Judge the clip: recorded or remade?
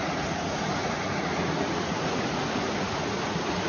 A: remade